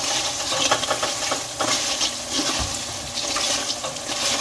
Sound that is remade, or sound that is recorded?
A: recorded